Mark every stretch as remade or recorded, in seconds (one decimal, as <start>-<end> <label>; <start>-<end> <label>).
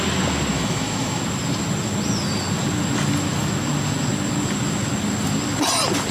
0.0-0.5 recorded; 0.5-1.2 remade; 1.2-6.1 recorded